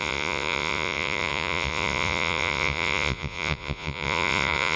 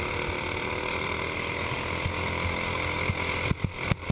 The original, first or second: second